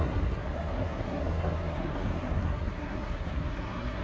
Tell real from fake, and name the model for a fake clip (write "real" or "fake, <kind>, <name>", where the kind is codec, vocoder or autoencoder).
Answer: fake, codec, SNAC